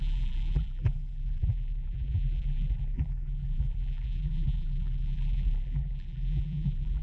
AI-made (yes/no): yes